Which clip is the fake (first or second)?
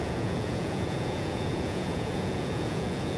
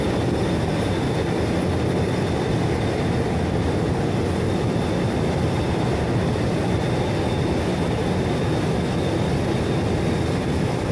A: first